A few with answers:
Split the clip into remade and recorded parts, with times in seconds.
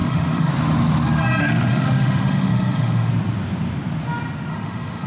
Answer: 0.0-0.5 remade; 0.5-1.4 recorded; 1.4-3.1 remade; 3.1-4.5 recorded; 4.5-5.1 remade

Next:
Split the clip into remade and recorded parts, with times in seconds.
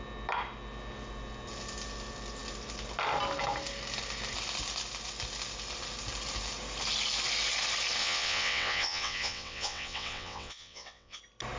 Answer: 0.0-8.0 recorded; 8.0-11.2 remade; 11.2-11.6 recorded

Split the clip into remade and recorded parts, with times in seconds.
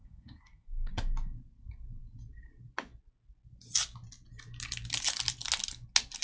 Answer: 0.0-0.9 remade; 0.9-6.2 recorded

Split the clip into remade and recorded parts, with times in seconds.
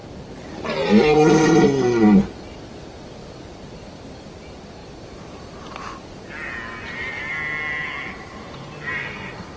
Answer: 0.0-1.5 remade; 1.5-4.8 recorded; 4.8-5.7 remade; 5.7-9.6 recorded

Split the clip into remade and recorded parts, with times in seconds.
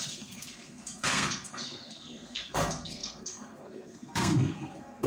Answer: 0.0-5.1 remade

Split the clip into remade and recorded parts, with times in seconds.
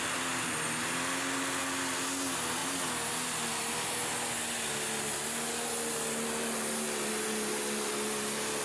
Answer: 0.0-8.6 recorded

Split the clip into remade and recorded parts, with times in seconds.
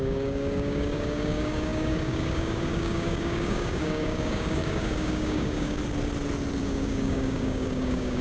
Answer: 0.0-5.8 remade; 5.8-6.6 recorded; 6.6-8.2 remade